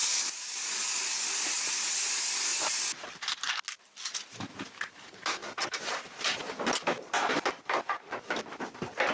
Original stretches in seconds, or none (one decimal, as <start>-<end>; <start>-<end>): 0.8-5.4; 8.6-9.1